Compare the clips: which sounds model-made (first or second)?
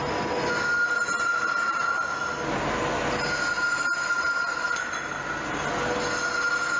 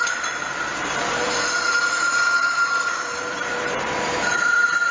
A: second